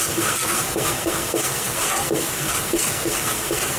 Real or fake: fake